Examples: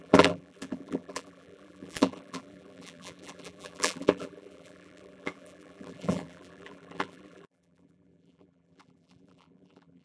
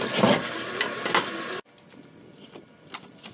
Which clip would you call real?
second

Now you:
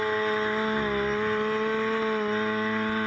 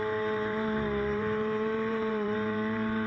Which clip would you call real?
first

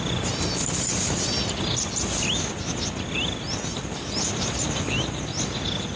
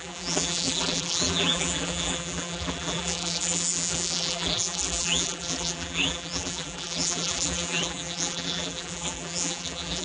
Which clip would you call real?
first